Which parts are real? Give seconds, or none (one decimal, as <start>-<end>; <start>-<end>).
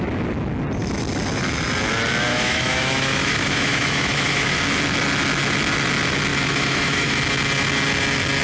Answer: 0.0-2.3; 4.6-6.3; 7.2-8.4